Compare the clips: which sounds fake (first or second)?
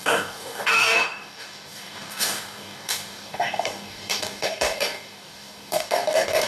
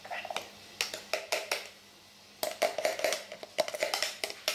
first